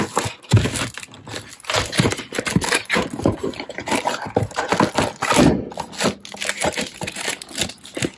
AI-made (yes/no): no